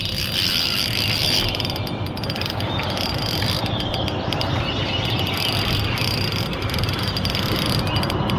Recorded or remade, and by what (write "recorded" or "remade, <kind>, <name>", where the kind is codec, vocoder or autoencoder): recorded